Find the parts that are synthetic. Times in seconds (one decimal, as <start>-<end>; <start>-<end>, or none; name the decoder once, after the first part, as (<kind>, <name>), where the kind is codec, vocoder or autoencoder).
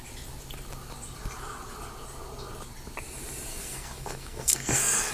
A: 3.5-5.1 (codec, SNAC)